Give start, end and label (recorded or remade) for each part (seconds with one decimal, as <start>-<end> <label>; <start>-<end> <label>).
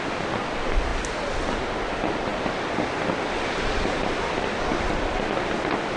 0.0-6.0 recorded